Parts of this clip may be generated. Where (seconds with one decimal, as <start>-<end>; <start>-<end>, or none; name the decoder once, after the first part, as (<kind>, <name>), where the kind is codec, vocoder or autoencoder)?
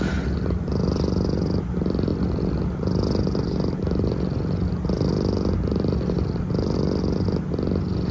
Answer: none